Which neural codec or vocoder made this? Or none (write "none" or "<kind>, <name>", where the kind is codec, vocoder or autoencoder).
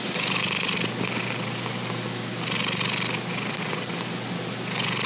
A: none